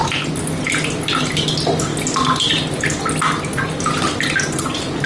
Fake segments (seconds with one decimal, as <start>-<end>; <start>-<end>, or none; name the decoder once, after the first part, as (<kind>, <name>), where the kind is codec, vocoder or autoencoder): none